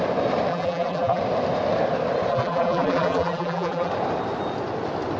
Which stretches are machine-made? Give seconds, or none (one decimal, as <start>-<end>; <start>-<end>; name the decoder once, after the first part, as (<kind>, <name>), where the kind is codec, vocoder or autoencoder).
0.5-1.2 (vocoder, BigVGAN v2); 2.3-3.9